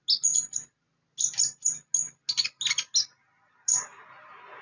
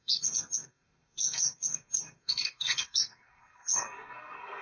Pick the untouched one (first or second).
first